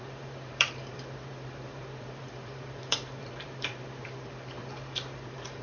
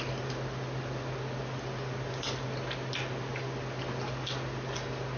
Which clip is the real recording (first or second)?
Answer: second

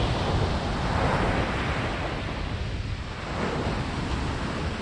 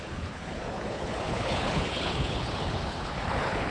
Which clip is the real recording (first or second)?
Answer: first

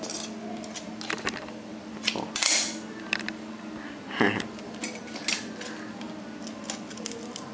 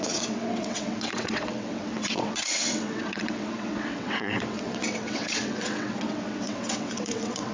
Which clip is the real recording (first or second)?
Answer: first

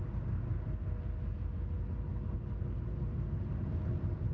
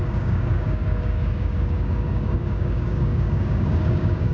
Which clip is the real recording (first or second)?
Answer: first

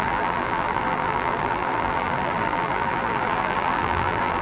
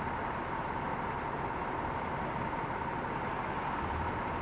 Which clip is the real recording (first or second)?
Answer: second